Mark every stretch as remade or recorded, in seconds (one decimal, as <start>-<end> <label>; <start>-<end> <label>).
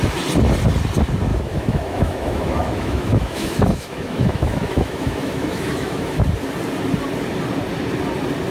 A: 0.0-1.3 recorded; 1.3-6.2 remade; 6.2-8.5 recorded